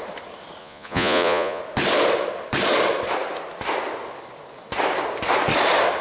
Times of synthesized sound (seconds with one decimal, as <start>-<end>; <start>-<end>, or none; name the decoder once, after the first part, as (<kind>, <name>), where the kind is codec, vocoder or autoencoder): 0.6-1.6 (vocoder, Vocos)